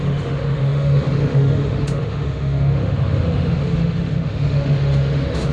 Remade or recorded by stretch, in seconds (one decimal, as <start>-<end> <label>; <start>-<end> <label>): 0.0-5.5 remade